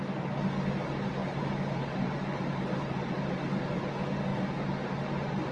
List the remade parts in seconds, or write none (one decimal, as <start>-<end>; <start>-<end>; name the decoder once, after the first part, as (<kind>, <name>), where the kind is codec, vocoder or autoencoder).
1.2-3.2 (vocoder, BigVGAN v2)